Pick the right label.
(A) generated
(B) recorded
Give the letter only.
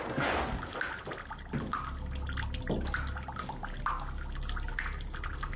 B